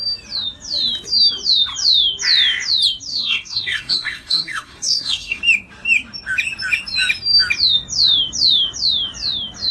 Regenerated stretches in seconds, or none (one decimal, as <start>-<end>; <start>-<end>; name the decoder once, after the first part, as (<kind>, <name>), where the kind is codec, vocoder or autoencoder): 3.1-5.4 (codec, SNAC)